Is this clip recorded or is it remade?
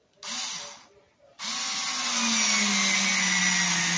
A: recorded